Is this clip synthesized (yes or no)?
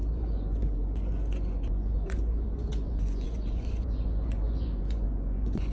yes